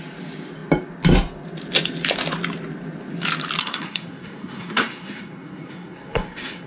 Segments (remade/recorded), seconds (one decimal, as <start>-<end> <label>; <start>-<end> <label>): 0.0-3.6 recorded; 3.6-6.7 remade

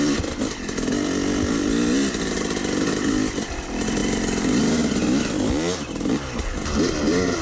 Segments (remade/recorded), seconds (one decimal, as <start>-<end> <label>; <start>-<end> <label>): 0.0-7.4 recorded